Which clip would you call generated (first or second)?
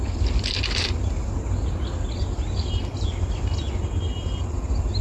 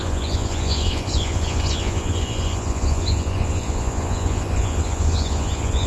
second